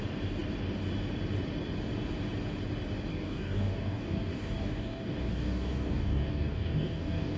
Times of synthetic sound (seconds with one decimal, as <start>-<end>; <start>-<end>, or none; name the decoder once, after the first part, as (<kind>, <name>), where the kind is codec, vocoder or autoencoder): 3.1-7.4 (codec, DAC)